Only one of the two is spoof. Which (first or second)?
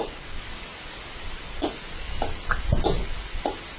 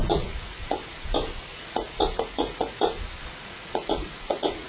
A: second